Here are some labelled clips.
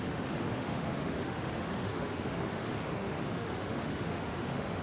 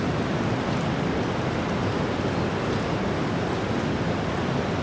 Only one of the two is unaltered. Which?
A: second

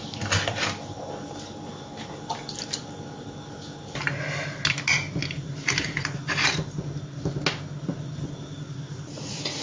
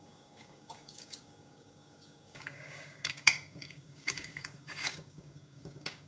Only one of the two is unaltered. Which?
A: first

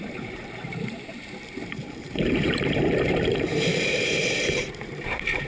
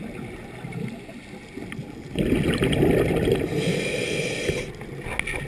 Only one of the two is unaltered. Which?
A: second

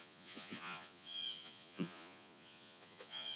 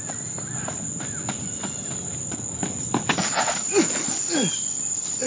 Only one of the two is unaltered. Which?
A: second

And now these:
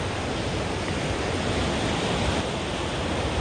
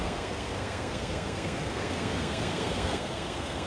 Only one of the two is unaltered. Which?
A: first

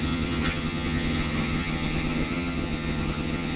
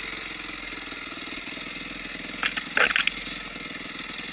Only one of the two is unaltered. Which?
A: second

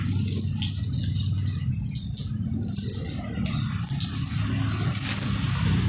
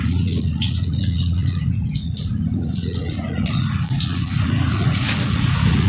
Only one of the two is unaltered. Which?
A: first